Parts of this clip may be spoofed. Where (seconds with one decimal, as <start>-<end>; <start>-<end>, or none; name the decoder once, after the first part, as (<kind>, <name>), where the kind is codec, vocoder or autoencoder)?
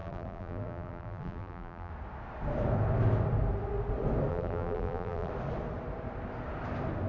0.0-1.9 (vocoder, BigVGAN v2); 4.3-5.3